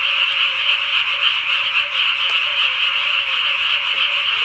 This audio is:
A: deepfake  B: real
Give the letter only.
B